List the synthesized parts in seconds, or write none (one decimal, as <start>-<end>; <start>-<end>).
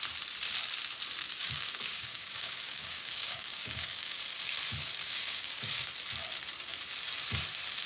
1.4-4.2; 5.0-5.7